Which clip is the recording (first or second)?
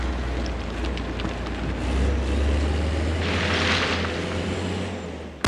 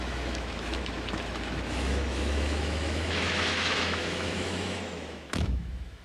first